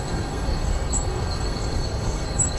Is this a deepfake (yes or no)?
yes